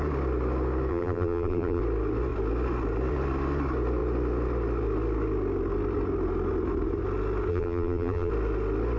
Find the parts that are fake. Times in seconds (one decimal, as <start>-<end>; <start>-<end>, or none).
0.9-1.8; 7.5-8.3

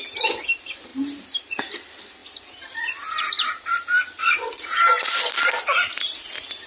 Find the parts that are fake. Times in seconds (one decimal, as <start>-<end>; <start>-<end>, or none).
none

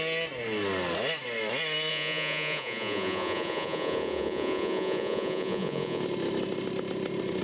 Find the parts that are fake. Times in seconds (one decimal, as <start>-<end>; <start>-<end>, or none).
1.9-6.0

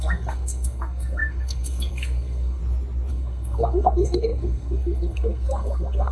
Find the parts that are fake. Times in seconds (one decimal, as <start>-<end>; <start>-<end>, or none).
0.0-2.6; 3.1-6.1

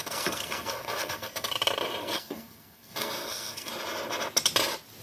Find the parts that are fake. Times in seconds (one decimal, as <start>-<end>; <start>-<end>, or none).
0.0-1.5; 2.0-3.7

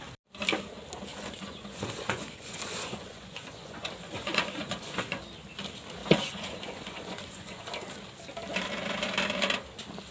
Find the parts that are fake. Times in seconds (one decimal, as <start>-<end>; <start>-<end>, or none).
1.1-5.2; 6.0-7.6